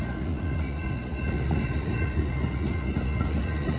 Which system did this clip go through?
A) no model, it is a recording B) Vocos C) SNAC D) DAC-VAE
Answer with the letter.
B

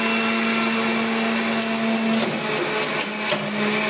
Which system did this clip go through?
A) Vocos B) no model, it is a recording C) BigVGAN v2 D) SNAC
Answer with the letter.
B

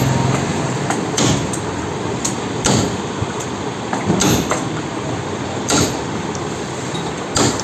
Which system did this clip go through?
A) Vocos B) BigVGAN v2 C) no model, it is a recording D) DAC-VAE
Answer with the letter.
C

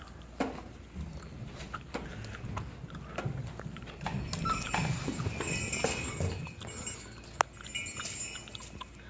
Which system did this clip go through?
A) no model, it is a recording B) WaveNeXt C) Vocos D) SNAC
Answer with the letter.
A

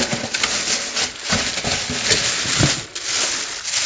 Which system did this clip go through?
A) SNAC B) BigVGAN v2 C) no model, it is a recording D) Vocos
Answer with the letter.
C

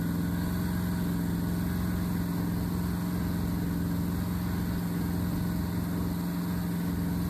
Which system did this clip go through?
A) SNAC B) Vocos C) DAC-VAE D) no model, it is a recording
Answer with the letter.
D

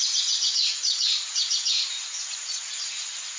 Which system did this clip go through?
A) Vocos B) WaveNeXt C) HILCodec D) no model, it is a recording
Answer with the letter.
A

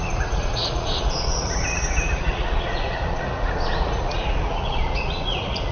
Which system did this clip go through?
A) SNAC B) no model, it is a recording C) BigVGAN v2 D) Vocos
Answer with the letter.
D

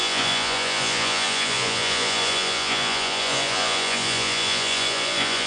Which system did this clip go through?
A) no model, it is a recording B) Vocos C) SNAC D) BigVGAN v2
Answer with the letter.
B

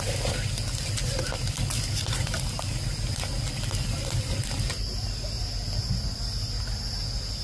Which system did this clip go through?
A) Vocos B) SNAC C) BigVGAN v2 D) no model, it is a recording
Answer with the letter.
D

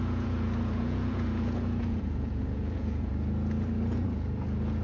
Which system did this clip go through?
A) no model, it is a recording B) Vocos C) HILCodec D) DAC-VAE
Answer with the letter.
B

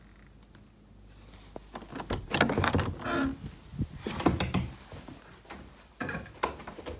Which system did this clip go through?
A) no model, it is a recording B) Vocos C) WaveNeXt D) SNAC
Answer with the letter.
A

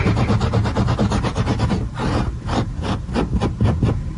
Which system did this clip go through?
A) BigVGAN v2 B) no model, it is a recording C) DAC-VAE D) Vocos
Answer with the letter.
B